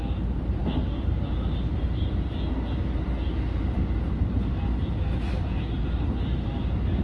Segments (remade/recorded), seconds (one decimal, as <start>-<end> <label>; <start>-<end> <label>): 0.0-7.0 recorded